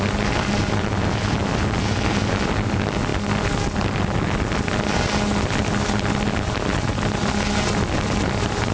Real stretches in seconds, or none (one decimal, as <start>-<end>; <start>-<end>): 0.0-8.7